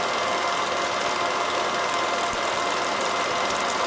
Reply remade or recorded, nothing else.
recorded